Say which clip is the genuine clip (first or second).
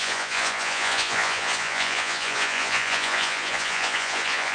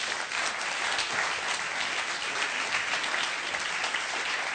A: second